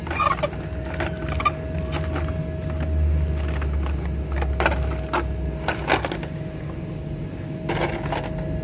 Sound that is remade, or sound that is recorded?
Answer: recorded